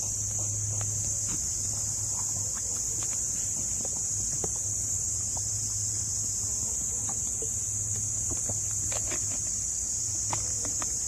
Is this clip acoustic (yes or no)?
yes